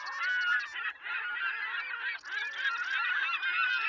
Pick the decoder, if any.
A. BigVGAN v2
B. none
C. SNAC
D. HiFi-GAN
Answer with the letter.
B